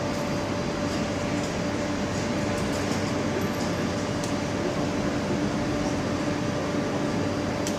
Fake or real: real